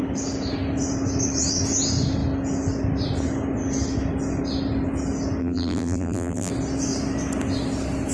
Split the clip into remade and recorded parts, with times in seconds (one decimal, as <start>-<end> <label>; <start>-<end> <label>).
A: 0.0-5.4 recorded; 5.4-6.5 remade; 6.5-8.1 recorded